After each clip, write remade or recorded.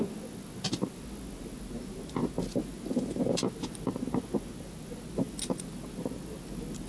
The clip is recorded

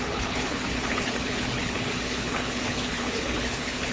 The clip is remade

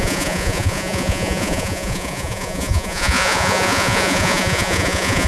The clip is remade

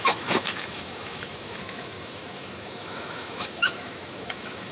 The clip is remade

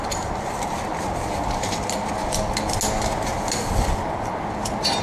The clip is recorded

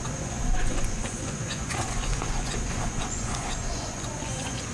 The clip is remade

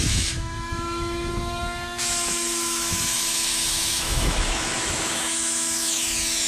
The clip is remade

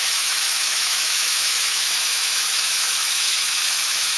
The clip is remade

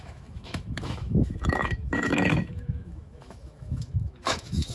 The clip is remade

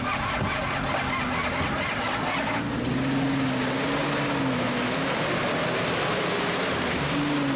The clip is recorded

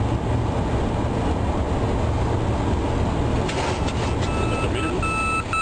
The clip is recorded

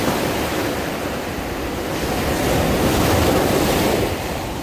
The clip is recorded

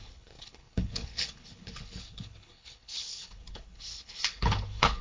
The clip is remade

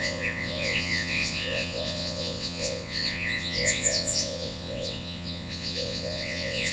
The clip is remade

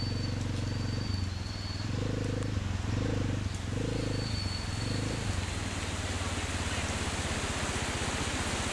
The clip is recorded